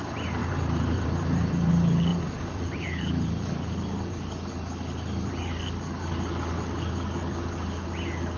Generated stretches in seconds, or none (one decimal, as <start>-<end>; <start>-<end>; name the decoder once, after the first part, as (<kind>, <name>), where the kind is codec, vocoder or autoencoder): 0.4-1.7 (vocoder, BigVGAN v2); 2.1-4.3